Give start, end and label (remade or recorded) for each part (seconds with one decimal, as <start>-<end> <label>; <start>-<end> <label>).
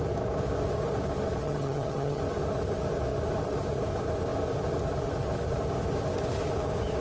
0.0-1.4 recorded; 1.4-2.2 remade; 2.2-7.0 recorded